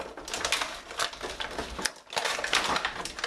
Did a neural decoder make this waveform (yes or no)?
no